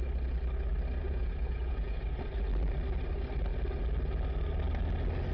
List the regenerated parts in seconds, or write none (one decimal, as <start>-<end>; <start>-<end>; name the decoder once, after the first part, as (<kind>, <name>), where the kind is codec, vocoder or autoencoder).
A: 1.0-2.0 (vocoder, Vocos)